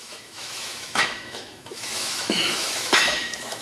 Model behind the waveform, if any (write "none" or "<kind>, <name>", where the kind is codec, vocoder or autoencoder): autoencoder, DAC-VAE